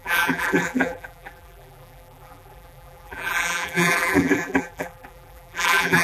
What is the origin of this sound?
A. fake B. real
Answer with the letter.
A